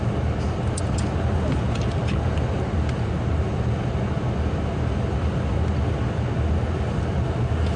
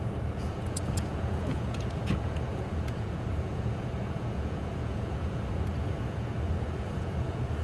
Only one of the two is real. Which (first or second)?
first